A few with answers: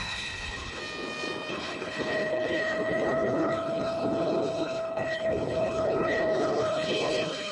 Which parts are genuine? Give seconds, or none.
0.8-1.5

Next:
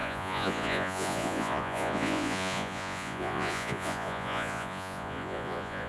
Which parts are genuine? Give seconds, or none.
none

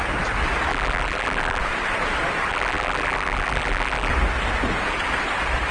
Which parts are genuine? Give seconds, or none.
0.0-0.7; 1.6-2.5; 4.1-5.7

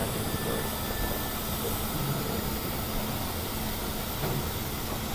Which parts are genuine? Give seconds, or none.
0.0-5.1

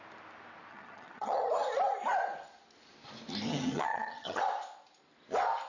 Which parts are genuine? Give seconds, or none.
0.0-0.7; 1.5-3.5; 4.4-5.7

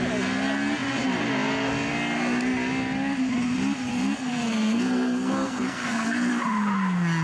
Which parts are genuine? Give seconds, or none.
0.0-3.9; 6.3-7.2

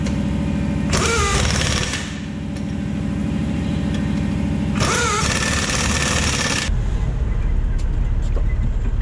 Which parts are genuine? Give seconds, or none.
0.0-3.2; 3.8-9.0